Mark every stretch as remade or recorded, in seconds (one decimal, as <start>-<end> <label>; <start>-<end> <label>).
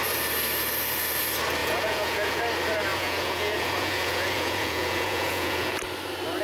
0.0-1.6 recorded; 1.6-2.4 remade; 2.4-2.9 recorded; 2.9-5.8 remade; 5.8-6.4 recorded